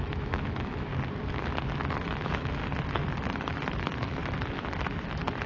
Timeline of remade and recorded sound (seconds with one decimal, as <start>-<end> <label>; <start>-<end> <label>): 0.0-0.9 remade; 0.9-1.8 recorded; 1.8-2.6 remade; 2.6-3.2 recorded; 3.2-4.2 remade; 4.2-5.5 recorded